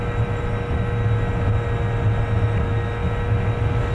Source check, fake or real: real